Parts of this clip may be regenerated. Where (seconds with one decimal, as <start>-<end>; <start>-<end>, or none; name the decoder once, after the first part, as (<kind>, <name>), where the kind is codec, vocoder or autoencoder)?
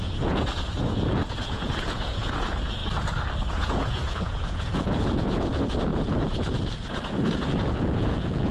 0.0-2.8 (vocoder, Vocos); 3.5-8.5